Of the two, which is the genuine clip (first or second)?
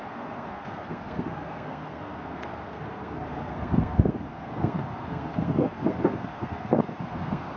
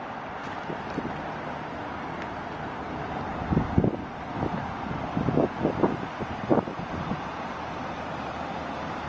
second